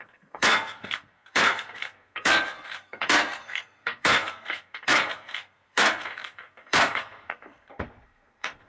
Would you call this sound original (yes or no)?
no